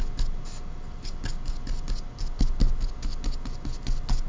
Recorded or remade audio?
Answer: recorded